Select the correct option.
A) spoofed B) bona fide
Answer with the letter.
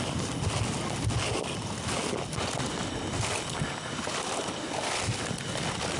B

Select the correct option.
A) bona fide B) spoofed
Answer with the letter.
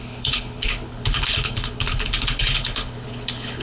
B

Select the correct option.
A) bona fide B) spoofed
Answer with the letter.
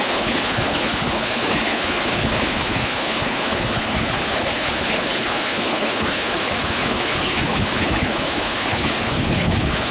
B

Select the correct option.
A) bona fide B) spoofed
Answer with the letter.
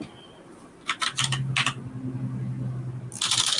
A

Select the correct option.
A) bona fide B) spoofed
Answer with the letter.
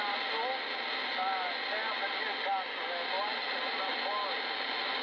A